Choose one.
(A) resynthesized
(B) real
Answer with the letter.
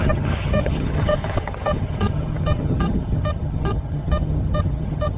A